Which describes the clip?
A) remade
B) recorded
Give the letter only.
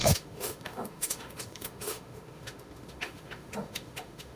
A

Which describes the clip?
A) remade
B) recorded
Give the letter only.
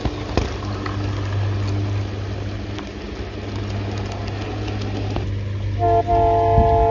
B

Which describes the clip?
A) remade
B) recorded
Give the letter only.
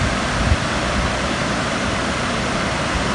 A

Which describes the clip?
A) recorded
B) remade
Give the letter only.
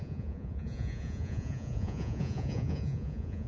B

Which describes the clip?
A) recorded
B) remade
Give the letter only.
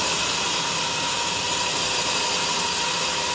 A